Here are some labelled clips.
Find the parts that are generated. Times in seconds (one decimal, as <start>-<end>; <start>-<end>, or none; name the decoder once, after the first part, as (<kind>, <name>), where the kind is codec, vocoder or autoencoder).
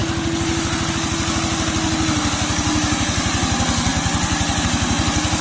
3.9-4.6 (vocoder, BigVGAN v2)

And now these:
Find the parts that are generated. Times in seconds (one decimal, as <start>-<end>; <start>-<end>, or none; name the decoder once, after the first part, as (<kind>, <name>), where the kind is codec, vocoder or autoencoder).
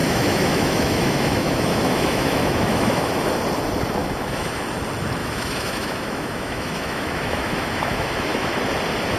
0.0-3.2 (autoencoder, DAC-VAE); 4.0-4.6; 5.2-8.5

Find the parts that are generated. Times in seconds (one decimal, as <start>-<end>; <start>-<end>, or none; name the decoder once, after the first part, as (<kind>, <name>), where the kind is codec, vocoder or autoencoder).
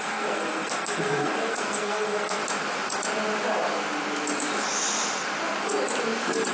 0.0-2.4 (codec, SNAC)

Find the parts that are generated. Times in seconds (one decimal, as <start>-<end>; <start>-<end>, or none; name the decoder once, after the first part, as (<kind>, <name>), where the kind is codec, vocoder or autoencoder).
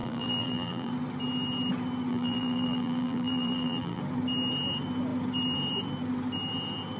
0.0-0.9 (vocoder, BigVGAN v2); 2.1-4.0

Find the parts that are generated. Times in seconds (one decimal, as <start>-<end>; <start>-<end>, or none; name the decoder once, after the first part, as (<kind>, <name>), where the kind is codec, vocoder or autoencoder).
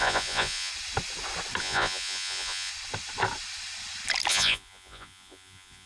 0.0-0.7 (vocoder, Vocos); 1.6-2.7; 4.3-5.9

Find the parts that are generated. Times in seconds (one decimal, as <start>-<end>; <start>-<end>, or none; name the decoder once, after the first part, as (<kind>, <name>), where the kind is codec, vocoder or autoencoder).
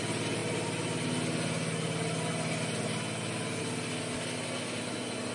none